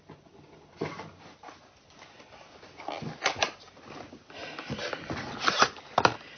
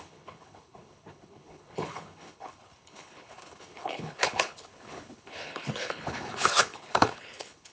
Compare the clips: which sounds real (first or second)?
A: first